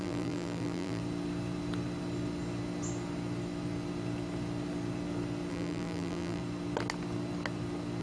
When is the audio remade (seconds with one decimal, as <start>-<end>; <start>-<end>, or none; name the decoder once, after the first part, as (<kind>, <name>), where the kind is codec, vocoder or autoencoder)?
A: 0.0-1.0 (vocoder, BigVGAN v2); 5.5-6.4